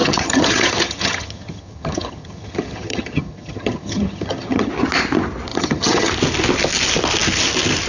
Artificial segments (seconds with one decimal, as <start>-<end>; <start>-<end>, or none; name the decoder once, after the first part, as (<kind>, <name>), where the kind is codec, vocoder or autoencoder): 0.0-4.7 (vocoder, HiFi-GAN); 5.5-6.1